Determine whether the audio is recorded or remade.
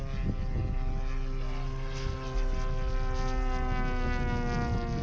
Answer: recorded